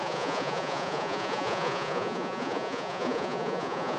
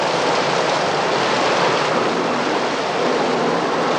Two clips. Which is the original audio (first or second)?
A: second